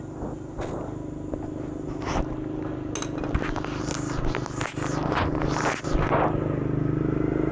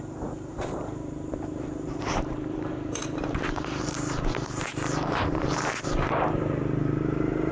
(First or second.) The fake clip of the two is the second